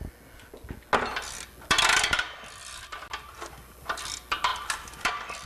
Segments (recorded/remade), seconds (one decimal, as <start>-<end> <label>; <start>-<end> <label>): 0.0-2.6 recorded; 2.6-4.0 remade; 4.0-4.5 recorded; 4.5-5.1 remade; 5.1-5.5 recorded